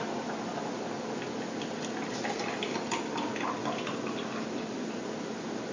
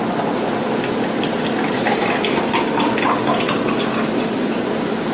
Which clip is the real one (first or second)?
first